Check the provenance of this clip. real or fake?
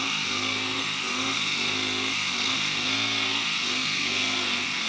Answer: fake